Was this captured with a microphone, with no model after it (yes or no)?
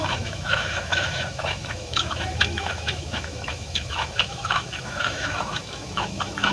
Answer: no